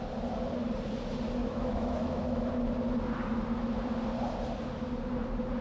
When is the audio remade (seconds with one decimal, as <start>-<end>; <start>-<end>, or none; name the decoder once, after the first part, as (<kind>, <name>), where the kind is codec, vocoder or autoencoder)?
1.4-2.5 (autoencoder, DAC-VAE)

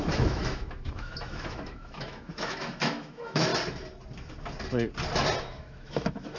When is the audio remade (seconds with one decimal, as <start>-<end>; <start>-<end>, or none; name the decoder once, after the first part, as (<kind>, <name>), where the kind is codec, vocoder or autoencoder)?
0.0-3.5 (autoencoder, DAC-VAE); 5.4-6.4

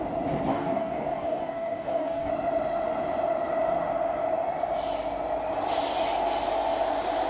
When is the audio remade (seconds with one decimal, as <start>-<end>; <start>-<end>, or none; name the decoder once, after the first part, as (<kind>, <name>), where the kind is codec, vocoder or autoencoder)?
0.5-2.3 (codec, DAC)

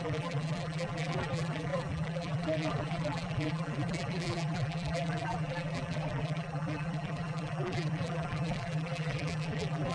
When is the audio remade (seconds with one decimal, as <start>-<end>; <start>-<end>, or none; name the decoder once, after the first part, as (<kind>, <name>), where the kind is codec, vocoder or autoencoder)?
0.0-9.9 (vocoder, BigVGAN v2)

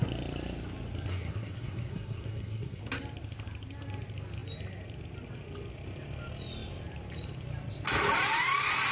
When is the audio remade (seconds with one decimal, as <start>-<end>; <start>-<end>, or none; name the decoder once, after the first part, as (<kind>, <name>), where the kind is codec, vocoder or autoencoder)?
1.1-2.8 (codec, SNAC)

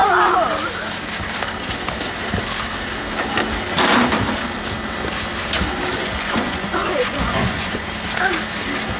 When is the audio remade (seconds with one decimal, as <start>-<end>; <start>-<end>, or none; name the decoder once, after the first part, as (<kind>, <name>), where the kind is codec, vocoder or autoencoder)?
5.9-7.9 (vocoder, Vocos)